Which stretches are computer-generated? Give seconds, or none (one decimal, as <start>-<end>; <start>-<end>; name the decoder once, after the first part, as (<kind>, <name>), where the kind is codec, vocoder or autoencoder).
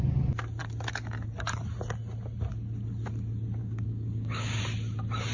3.6-4.6 (codec, DAC)